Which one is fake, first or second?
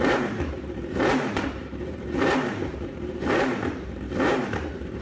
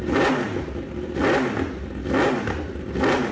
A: first